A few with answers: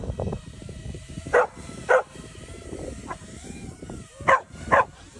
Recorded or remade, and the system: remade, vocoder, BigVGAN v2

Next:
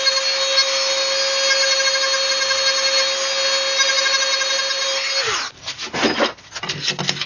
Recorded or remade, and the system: recorded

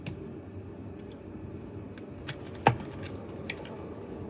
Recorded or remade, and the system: recorded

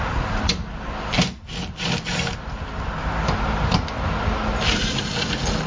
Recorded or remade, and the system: recorded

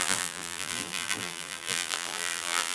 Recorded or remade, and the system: remade, vocoder, BigVGAN v2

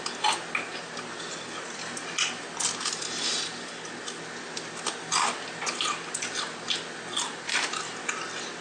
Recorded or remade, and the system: recorded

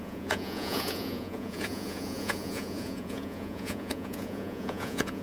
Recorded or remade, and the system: remade, vocoder, Vocos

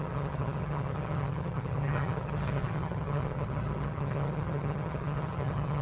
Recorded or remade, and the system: remade, vocoder, HiFi-GAN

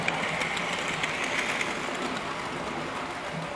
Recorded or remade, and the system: recorded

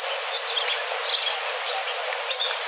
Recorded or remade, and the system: recorded